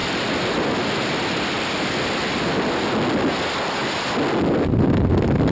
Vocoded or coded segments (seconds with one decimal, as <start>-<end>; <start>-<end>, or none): none